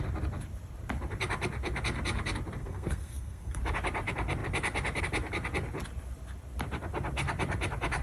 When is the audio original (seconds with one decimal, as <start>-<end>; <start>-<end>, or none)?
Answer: 0.0-2.6; 3.6-8.0